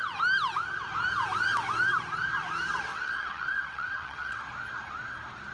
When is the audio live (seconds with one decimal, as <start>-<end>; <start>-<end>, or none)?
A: 0.0-2.9; 4.4-5.5